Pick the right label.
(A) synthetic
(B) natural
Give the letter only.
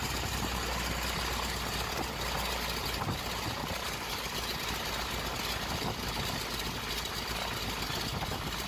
B